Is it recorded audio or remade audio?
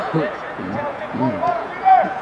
remade